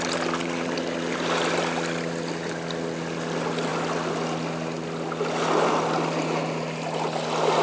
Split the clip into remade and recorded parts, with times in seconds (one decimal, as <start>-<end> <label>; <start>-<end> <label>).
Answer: 0.0-7.6 recorded